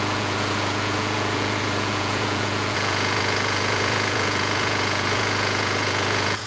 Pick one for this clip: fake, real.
fake